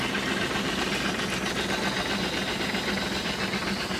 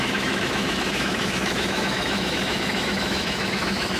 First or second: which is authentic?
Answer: first